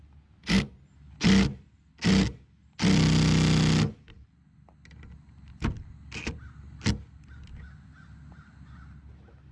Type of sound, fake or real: real